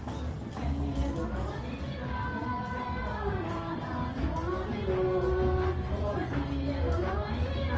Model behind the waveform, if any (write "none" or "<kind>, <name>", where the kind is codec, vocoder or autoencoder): none